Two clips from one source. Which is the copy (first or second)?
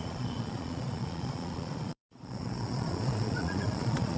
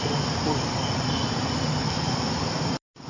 first